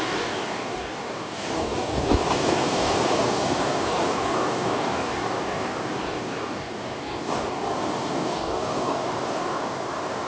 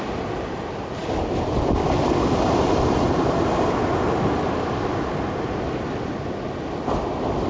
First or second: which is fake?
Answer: first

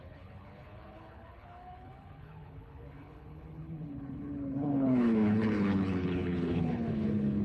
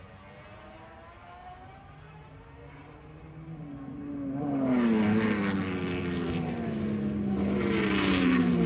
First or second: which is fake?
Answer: first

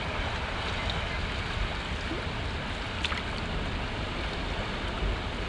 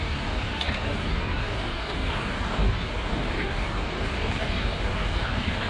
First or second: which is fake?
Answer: second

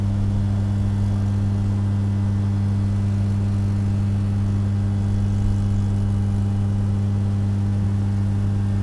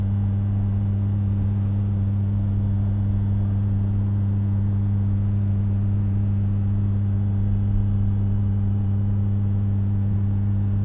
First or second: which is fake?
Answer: second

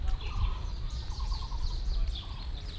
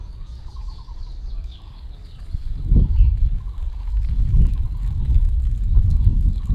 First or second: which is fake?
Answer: second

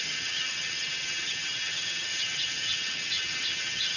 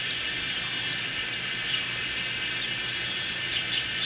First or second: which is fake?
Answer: first